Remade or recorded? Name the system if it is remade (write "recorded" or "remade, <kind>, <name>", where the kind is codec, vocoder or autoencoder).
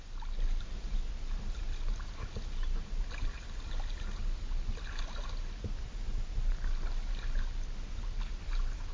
recorded